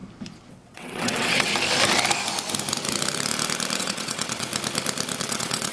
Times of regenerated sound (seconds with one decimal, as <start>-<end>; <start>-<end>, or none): 0.5-1.5; 3.8-4.5; 5.2-5.7